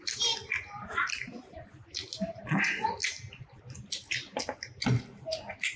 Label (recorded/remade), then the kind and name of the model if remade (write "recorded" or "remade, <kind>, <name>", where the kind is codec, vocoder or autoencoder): recorded